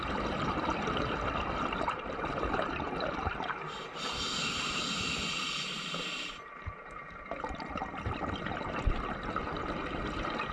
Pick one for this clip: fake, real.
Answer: real